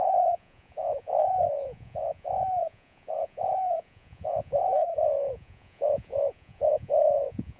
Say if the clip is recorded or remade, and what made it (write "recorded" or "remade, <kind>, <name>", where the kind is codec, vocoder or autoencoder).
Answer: remade, vocoder, Vocos